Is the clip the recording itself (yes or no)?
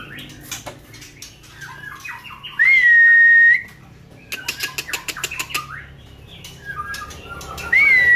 yes